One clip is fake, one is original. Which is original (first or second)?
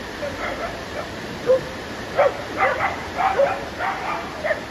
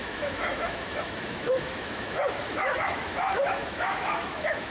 first